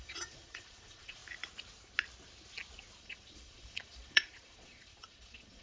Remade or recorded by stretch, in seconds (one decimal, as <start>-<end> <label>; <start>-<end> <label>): 0.0-1.2 remade; 1.2-3.0 recorded; 3.0-5.6 remade